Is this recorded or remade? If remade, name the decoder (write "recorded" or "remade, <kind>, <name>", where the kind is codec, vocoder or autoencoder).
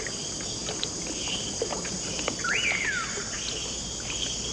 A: recorded